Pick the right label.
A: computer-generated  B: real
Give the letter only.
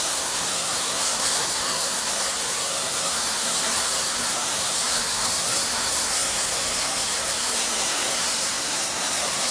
A